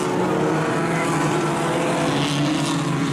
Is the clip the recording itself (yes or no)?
yes